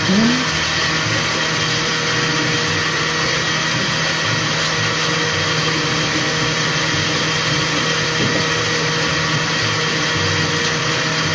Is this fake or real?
real